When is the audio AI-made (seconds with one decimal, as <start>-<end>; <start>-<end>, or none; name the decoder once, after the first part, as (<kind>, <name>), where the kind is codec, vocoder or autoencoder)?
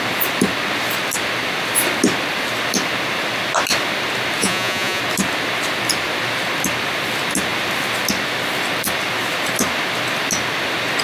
4.4-5.0 (vocoder, Vocos)